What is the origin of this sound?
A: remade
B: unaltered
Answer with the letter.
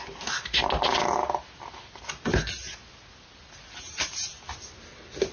B